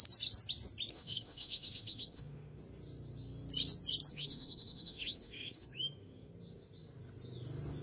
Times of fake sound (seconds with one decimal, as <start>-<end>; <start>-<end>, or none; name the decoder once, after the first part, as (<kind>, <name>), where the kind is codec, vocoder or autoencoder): 0.9-2.6 (autoencoder, DAC-VAE); 4.1-6.3